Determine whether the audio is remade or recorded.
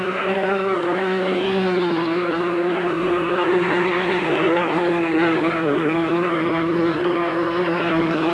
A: remade